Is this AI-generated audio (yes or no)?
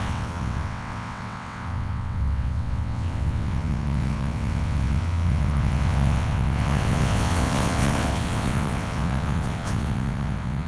yes